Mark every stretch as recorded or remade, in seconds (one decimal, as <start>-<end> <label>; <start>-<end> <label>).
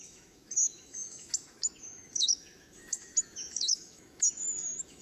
0.0-5.0 remade